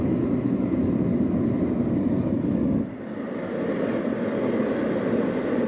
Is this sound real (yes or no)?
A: yes